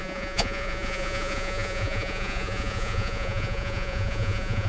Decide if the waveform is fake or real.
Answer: fake